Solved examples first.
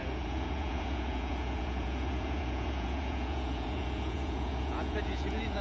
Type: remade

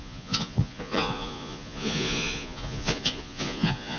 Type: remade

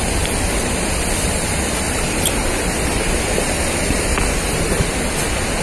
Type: recorded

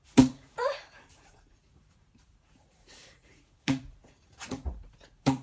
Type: remade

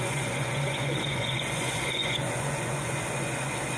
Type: remade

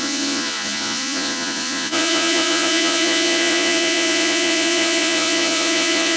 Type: remade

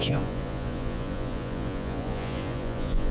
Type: remade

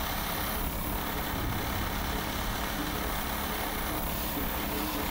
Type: recorded